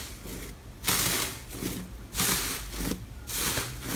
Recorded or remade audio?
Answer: recorded